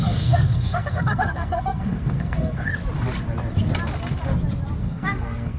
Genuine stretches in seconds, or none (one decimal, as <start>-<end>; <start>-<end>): 2.7-4.8